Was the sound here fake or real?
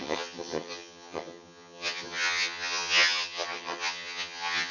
fake